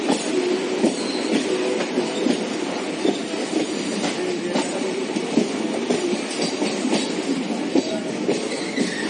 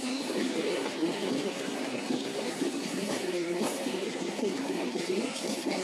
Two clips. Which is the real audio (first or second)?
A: first